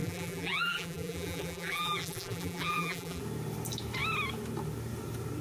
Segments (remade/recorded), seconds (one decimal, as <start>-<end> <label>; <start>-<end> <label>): 0.0-3.2 remade; 3.2-5.4 recorded